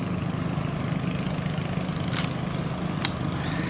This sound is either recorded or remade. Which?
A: recorded